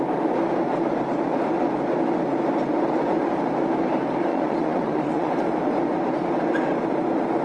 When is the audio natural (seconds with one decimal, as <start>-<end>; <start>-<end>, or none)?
0.0-4.3; 5.3-7.4